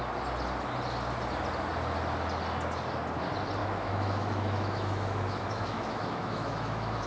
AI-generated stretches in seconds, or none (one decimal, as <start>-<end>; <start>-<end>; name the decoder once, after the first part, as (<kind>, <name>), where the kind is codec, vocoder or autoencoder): 3.6-7.1 (autoencoder, DAC-VAE)